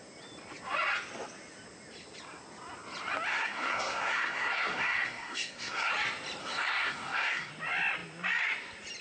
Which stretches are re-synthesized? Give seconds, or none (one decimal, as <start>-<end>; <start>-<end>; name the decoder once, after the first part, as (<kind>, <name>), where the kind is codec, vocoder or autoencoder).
3.3-5.9 (codec, SNAC); 6.4-7.5

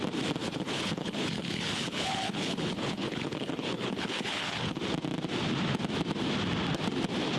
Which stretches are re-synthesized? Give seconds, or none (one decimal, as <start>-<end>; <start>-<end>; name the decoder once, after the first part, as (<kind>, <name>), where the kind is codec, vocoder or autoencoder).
0.4-4.8 (codec, HILCodec)

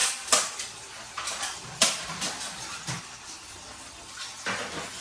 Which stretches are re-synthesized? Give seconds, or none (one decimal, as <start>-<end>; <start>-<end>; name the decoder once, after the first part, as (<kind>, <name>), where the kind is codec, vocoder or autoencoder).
0.0-3.0 (vocoder, BigVGAN v2)

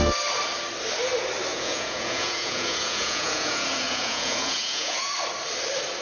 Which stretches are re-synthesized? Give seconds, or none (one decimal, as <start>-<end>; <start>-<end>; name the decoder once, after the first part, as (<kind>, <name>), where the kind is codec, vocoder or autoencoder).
1.5-5.1 (vocoder, Vocos)

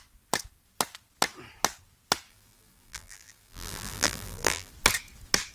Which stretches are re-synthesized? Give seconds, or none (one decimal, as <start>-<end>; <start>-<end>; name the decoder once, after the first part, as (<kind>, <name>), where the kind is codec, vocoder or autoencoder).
2.3-4.7 (vocoder, BigVGAN v2)

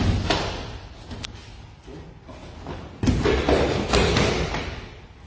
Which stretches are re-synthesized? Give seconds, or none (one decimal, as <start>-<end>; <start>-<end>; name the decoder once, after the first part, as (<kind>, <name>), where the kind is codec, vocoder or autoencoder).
none

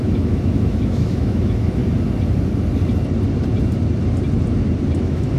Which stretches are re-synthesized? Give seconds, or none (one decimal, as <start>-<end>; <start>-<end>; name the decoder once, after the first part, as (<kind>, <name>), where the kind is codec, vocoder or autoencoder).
0.0-1.8 (autoencoder, DAC-VAE); 5.0-5.4

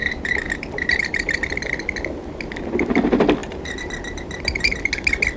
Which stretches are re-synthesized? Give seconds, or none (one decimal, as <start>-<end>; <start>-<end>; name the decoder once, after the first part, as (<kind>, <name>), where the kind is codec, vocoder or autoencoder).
0.0-1.5 (vocoder, BigVGAN v2); 3.4-4.9